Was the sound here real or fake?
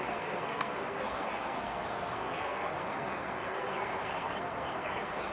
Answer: fake